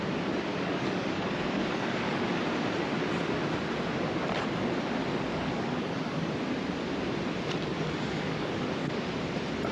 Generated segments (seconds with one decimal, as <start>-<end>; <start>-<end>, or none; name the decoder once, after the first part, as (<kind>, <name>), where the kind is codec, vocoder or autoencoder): 0.5-2.2 (codec, DAC); 5.1-6.3; 7.7-8.9